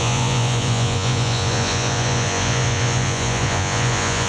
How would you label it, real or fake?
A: fake